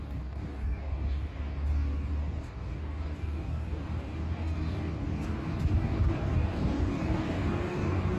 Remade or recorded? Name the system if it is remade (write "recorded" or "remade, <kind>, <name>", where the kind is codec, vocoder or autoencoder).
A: remade, codec, DAC